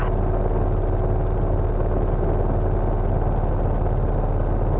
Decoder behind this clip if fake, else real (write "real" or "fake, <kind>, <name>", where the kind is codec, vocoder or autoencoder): real